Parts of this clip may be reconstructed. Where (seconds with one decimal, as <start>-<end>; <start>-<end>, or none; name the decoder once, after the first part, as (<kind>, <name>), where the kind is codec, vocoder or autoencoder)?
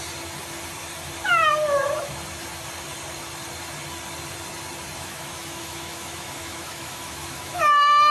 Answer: 5.0-8.1 (autoencoder, DAC-VAE)